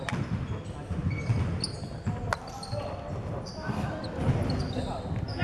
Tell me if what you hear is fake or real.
real